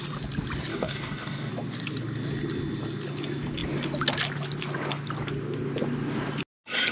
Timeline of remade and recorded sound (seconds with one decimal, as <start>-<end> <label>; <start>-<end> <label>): 0.0-0.7 recorded; 0.7-1.5 remade; 1.5-6.9 recorded